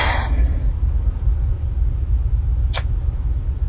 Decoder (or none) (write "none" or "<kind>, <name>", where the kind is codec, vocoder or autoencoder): none